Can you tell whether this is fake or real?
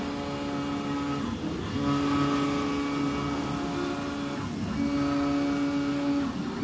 real